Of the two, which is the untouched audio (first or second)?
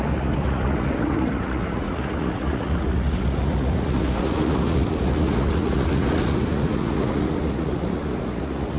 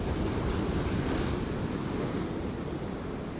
second